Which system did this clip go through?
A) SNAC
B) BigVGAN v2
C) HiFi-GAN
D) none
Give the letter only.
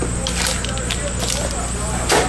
D